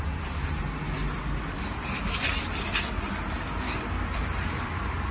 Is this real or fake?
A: real